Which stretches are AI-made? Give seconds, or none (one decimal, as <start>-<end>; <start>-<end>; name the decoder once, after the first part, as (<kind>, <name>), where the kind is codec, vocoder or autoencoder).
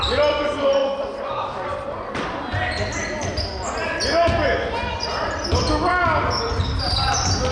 none